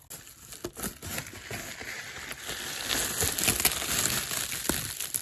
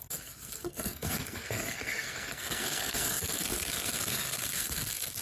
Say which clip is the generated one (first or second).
second